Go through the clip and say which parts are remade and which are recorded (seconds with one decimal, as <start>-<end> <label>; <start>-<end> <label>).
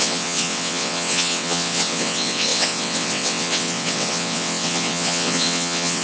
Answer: 0.0-6.0 remade